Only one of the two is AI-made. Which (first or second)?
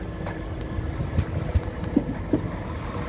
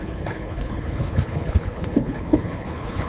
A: second